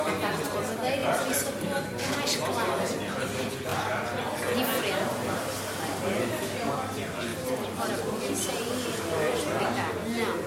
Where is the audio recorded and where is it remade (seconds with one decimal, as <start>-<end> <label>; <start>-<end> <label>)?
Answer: 0.0-1.0 recorded; 1.0-1.8 remade; 1.8-7.3 recorded; 7.3-8.2 remade; 8.2-10.5 recorded